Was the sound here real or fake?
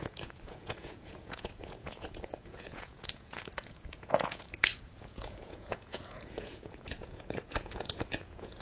fake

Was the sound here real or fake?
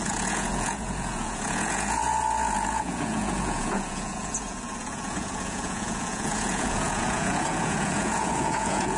fake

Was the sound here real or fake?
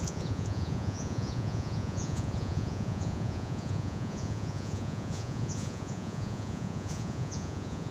fake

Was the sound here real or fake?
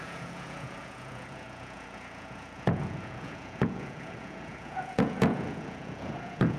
fake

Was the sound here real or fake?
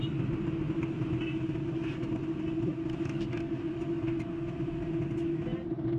real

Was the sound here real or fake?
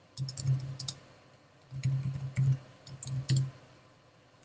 real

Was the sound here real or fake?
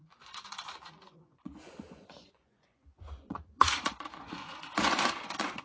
fake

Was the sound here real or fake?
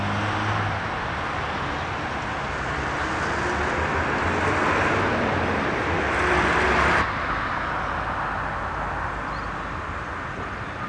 real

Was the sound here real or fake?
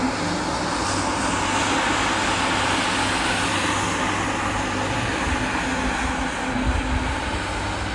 real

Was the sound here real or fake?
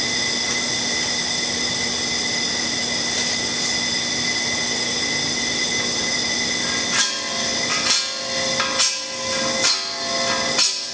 real